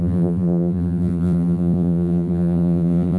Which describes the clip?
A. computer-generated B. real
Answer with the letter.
A